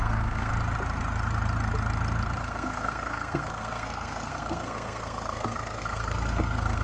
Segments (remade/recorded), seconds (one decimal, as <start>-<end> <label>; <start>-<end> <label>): 0.0-0.5 remade; 0.5-2.4 recorded; 2.4-6.8 remade